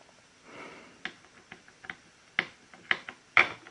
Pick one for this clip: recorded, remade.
recorded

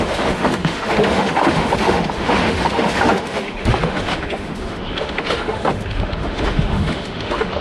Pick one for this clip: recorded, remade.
remade